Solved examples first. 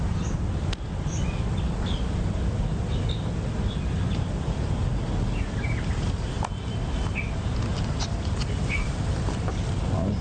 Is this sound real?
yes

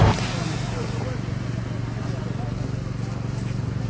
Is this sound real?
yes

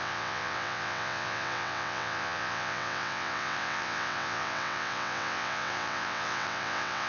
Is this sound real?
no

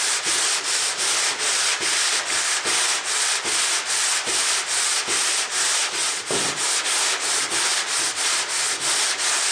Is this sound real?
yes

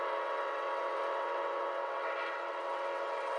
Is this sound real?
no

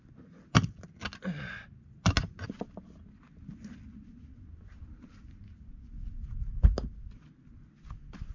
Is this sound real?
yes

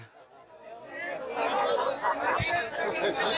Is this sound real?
yes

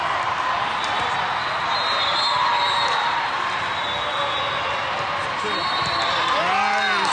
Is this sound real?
yes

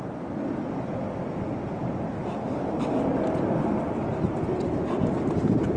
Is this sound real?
yes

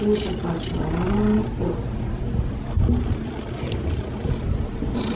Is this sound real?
yes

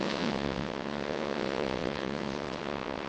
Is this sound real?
no